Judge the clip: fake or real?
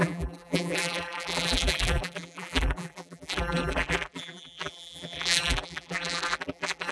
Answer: fake